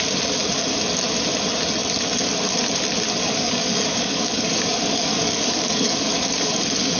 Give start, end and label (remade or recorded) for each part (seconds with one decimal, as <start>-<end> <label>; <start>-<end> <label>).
0.0-3.2 recorded; 3.2-6.5 remade; 6.5-7.0 recorded

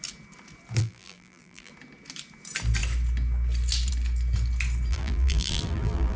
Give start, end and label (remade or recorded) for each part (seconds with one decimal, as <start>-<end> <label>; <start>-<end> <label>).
0.0-0.8 recorded; 0.8-1.7 remade; 1.7-4.9 recorded; 4.9-6.2 remade